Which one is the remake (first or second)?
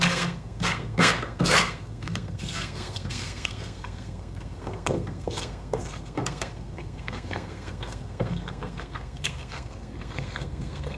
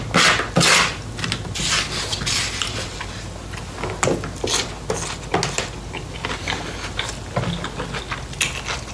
first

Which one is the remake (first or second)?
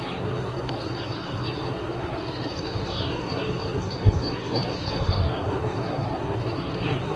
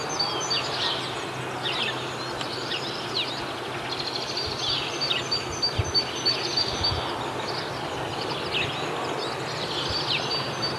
first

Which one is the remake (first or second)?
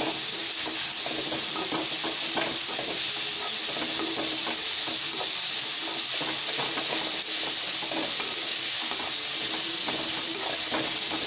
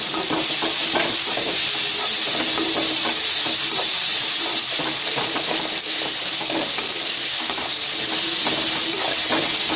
second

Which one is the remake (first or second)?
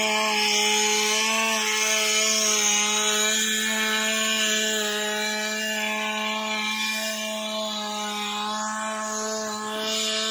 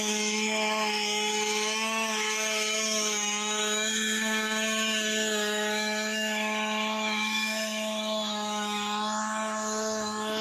second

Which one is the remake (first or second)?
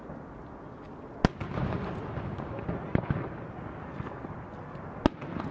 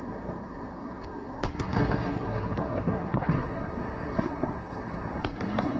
second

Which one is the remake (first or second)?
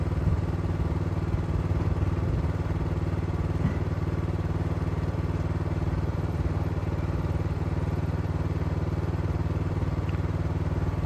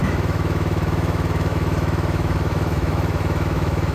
second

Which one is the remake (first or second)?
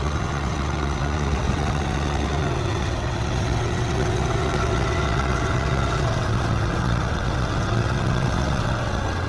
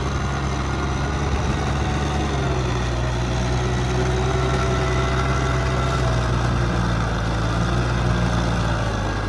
first